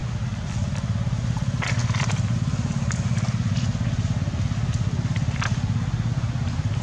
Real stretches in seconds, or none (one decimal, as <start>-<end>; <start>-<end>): 0.0-6.8

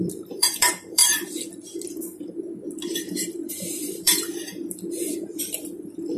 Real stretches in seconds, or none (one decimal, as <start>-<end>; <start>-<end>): 1.0-3.5; 4.6-5.2

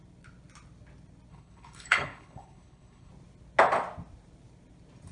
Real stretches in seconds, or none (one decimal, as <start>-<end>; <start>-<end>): 0.0-1.3; 3.1-5.1

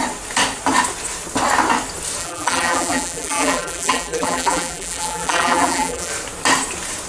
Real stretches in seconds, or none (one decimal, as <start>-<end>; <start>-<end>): 0.0-2.2; 6.1-7.1